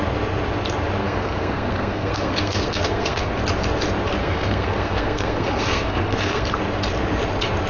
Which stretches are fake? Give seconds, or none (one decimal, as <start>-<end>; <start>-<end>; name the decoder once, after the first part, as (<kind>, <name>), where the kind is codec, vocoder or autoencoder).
1.0-3.4 (codec, SNAC); 4.2-6.6